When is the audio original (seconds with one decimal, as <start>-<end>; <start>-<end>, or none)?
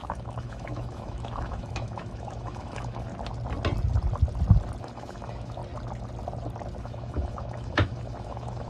3.1-4.8; 5.6-6.8